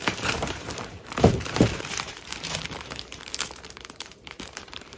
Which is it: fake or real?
fake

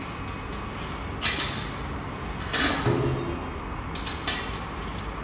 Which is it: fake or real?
real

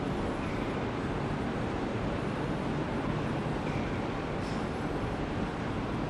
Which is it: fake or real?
fake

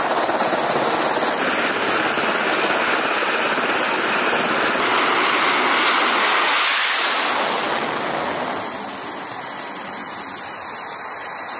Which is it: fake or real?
real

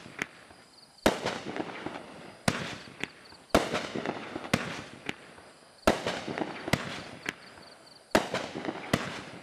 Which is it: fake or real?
real